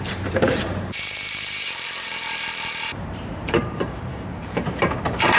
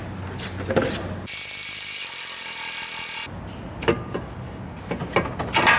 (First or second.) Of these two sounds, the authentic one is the second